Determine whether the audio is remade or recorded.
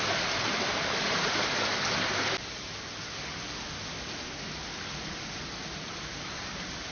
recorded